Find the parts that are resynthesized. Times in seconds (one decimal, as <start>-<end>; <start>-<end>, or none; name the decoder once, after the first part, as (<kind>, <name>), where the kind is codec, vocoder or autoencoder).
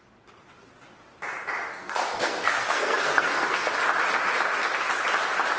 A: 1.7-3.7 (codec, SNAC)